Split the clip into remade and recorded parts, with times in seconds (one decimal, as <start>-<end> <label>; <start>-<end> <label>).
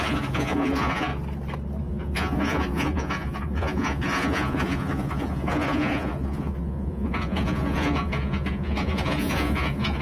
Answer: 0.0-1.1 remade; 1.1-1.8 recorded; 1.8-10.0 remade